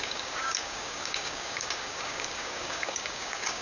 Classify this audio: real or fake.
fake